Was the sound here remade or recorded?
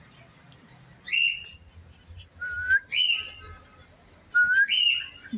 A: recorded